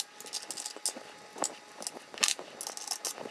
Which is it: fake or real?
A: real